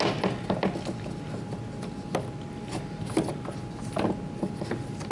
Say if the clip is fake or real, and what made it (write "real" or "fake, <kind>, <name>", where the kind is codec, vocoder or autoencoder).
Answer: real